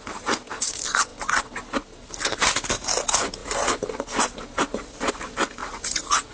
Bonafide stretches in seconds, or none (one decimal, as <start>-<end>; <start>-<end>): 0.0-5.6